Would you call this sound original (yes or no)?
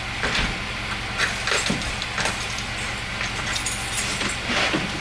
yes